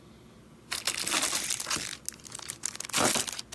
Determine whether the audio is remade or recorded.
recorded